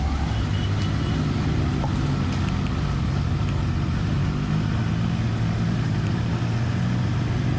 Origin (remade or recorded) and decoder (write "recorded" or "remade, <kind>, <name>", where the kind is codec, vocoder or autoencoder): recorded